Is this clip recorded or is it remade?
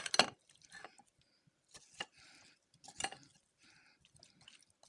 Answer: recorded